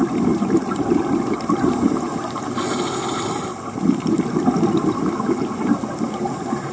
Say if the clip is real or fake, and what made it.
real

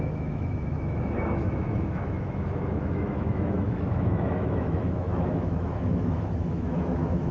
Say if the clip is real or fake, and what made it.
fake, autoencoder, DAC-VAE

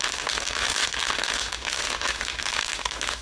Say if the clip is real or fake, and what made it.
fake, autoencoder, DAC-VAE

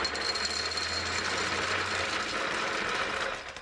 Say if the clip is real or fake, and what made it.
real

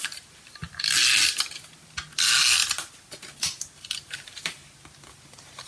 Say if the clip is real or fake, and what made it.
real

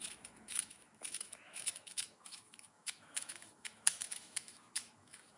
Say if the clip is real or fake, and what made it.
fake, autoencoder, DAC-VAE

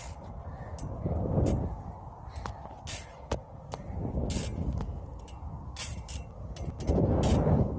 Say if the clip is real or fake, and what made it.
real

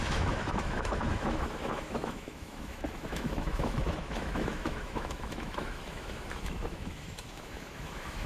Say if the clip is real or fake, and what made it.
fake, autoencoder, DAC-VAE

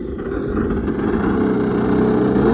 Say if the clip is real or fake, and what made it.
real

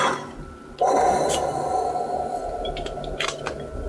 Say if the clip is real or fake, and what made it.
real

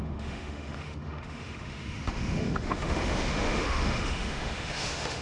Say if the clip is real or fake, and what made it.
fake, autoencoder, DAC-VAE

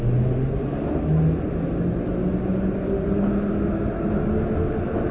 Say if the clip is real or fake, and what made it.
real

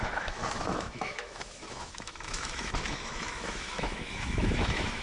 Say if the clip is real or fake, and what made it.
fake, autoencoder, DAC-VAE